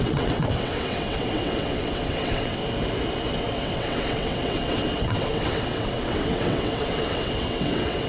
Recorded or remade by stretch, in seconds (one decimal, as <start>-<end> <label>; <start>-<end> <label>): 0.0-2.6 remade; 2.6-3.3 recorded; 3.3-8.1 remade